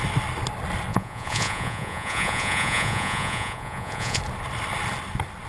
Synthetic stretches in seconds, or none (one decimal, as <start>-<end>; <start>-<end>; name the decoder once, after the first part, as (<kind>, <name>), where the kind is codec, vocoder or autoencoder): 0.9-4.2 (vocoder, Vocos)